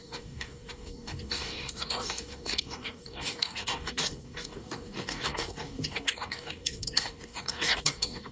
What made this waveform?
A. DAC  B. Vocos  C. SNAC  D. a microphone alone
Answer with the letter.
A